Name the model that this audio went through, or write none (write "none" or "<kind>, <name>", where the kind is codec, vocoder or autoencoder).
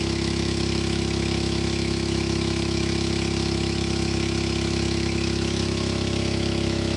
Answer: autoencoder, DAC-VAE